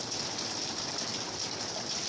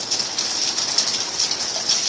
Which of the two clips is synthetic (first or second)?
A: first